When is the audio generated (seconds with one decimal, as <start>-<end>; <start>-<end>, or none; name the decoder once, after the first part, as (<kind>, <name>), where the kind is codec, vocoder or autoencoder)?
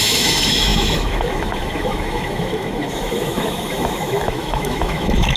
0.0-5.4 (autoencoder, DAC-VAE)